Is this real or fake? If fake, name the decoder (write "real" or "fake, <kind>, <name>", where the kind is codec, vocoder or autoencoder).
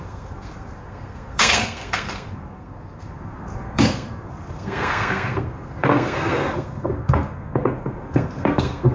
fake, codec, SNAC